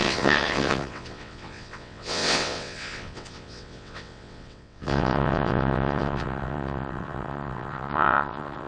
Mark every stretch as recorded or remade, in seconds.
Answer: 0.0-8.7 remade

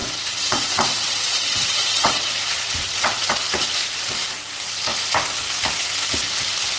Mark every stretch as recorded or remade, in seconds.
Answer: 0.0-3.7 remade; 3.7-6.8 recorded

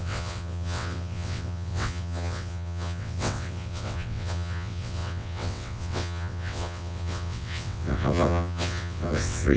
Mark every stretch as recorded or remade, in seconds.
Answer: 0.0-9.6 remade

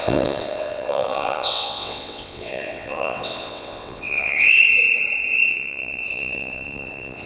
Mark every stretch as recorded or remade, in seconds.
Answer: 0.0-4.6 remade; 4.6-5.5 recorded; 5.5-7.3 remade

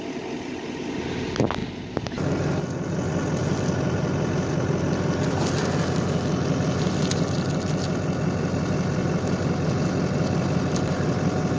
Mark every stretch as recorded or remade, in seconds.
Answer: 0.0-11.6 recorded